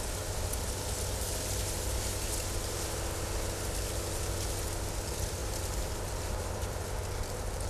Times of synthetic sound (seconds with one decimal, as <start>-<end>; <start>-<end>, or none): 5.4-6.9